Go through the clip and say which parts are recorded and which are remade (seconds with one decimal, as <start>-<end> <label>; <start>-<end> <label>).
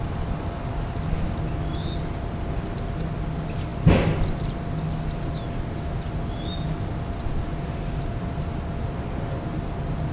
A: 0.0-10.1 recorded